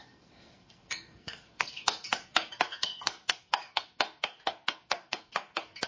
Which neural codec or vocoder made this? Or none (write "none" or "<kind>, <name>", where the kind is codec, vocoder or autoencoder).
codec, SNAC